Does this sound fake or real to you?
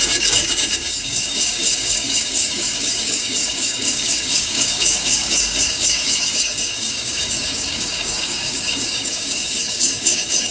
fake